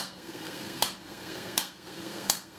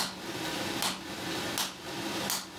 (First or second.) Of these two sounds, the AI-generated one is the first